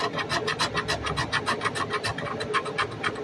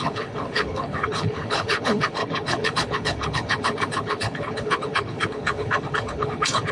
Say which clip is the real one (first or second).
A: first